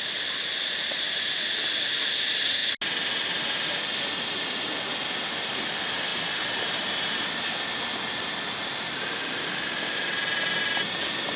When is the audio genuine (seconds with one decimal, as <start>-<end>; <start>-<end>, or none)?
0.0-6.1; 7.2-11.4